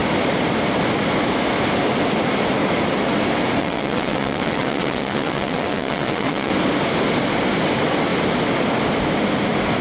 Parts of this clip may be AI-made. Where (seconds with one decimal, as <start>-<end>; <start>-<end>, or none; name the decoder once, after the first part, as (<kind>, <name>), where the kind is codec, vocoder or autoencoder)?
3.6-6.5 (vocoder, WaveNeXt)